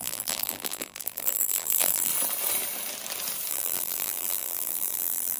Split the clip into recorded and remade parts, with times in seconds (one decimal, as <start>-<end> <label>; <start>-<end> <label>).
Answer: 0.0-2.1 remade; 2.1-3.5 recorded; 3.5-5.4 remade